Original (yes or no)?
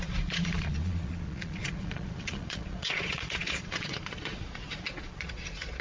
no